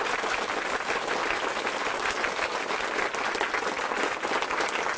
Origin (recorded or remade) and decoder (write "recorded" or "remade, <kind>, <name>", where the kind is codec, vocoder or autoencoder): recorded